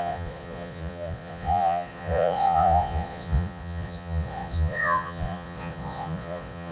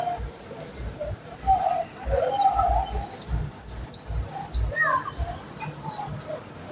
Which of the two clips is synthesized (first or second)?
first